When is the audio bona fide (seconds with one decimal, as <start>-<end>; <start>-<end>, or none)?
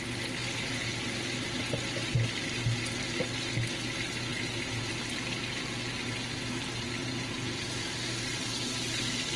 0.0-4.3; 4.9-7.0; 7.7-9.4